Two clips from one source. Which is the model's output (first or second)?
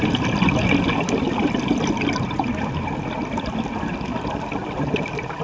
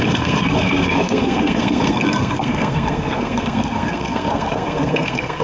second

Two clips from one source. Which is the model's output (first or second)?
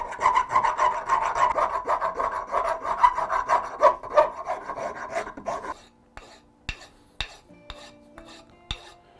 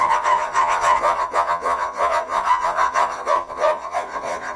second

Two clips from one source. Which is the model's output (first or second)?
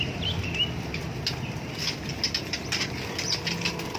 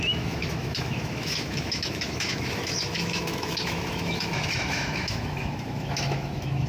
second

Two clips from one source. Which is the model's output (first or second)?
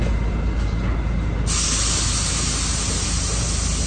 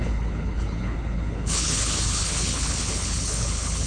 second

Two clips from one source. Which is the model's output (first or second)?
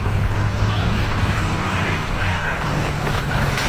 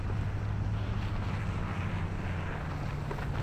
first